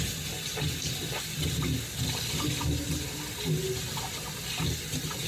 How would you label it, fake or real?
real